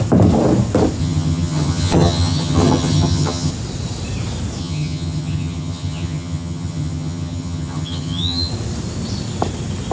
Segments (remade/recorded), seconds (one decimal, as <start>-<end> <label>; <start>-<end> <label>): 0.0-1.0 recorded; 1.0-3.5 remade; 3.5-4.6 recorded; 4.6-8.5 remade; 8.5-9.9 recorded